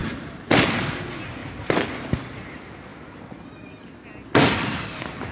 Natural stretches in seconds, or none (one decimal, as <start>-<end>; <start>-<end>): 0.6-5.3

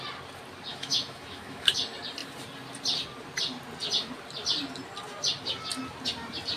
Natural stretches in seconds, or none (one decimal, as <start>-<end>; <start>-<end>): 0.0-0.7; 1.8-6.6

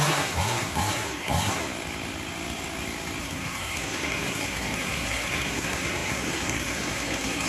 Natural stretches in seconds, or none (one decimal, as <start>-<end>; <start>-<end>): 1.6-3.2

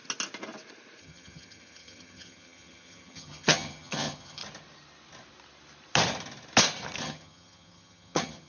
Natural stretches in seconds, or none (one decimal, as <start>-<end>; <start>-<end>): 0.0-1.0; 4.4-7.0

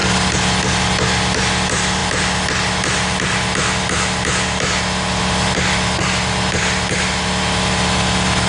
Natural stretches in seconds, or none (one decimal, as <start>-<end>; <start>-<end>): 0.0-8.5

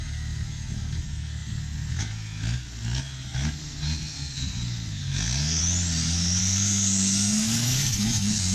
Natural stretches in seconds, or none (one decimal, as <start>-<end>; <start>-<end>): 5.6-6.4

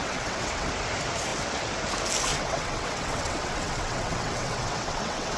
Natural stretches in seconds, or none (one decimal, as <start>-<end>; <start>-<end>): 0.7-2.3